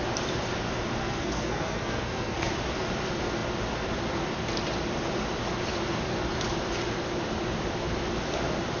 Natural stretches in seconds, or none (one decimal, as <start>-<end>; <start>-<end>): 0.0-1.0; 2.5-8.8